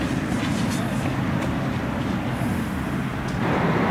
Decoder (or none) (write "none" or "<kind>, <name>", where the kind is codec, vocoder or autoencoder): none